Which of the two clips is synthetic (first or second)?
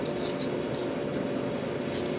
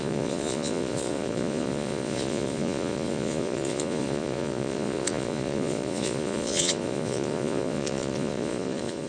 second